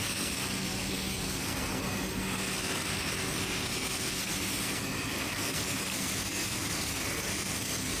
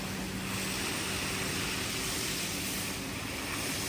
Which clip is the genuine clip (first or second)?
second